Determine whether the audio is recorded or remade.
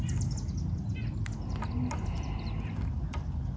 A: recorded